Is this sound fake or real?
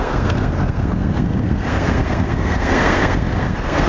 fake